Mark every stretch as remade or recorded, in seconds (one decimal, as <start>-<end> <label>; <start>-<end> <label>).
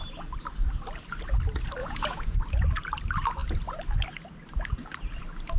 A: 0.0-1.8 recorded; 1.8-2.4 remade; 2.4-5.6 recorded